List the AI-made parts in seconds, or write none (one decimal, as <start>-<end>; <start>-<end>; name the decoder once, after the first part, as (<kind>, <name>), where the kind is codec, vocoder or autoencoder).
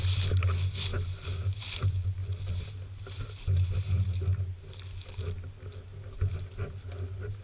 none